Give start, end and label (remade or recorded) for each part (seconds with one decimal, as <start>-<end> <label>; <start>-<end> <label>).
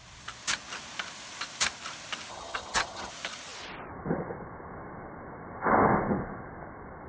0.0-2.3 recorded; 2.3-3.1 remade; 3.1-7.1 recorded